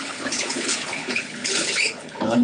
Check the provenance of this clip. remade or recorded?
remade